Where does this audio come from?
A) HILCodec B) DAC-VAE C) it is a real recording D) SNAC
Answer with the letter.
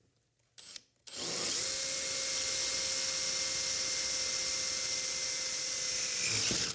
C